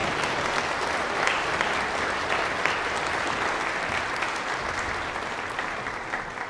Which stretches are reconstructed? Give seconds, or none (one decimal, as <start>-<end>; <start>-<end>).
none